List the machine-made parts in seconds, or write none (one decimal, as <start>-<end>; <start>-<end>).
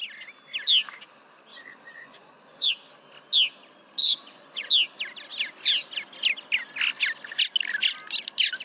1.5-2.7; 4.0-4.7